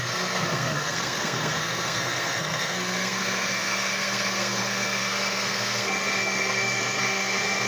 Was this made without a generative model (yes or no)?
no